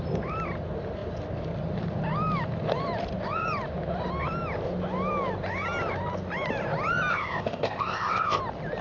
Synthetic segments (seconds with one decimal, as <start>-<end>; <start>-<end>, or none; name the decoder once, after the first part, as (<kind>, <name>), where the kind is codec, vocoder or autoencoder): 7.1-8.4 (codec, ZipCodec)

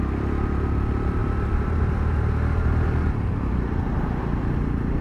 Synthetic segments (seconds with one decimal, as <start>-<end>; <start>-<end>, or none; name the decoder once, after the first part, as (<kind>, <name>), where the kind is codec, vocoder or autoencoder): 1.2-4.2 (vocoder, BigVGAN v2)

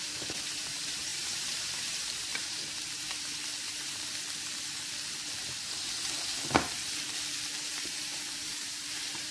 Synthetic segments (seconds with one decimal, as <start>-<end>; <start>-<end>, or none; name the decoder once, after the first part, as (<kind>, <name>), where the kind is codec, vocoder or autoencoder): 0.0-4.1 (vocoder, BigVGAN v2); 7.7-9.3

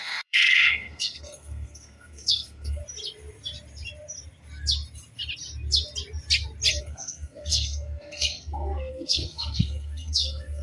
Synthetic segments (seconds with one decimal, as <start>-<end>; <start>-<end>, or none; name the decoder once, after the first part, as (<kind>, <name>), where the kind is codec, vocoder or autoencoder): 0.0-2.8 (codec, SNAC); 6.8-10.6

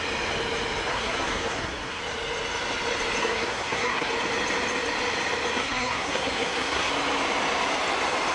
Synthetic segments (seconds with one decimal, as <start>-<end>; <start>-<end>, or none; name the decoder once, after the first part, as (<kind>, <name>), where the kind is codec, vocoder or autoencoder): 0.9-2.0 (codec, SNAC); 3.2-4.1; 5.6-6.9

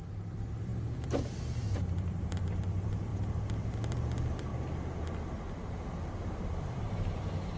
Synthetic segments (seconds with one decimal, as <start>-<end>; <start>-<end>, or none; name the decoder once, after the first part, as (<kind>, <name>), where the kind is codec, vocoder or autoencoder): 0.0-4.5 (vocoder, BigVGAN v2); 5.9-7.6